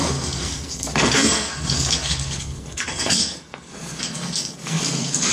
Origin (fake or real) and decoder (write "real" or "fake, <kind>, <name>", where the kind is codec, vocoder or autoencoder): fake, codec, SNAC